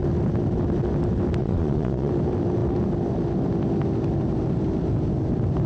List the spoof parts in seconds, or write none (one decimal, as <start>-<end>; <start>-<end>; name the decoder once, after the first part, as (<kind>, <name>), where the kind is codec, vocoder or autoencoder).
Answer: 1.4-2.1 (vocoder, Vocos)